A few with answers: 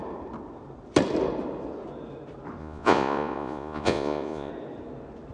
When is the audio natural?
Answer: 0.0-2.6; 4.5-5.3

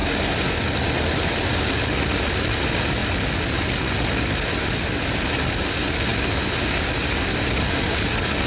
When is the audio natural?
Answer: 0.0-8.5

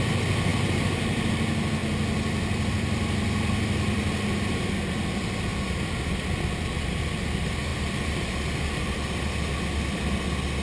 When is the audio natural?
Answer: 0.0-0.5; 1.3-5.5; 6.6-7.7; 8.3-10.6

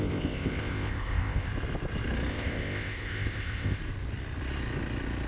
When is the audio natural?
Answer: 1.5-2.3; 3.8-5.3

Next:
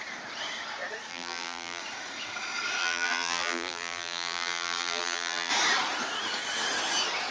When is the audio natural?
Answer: 0.0-1.1; 1.8-2.8; 5.5-7.3

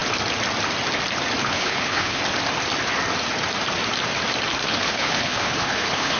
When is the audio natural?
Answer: 0.0-1.4; 2.2-4.6